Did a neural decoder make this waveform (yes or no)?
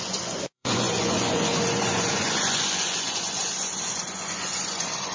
yes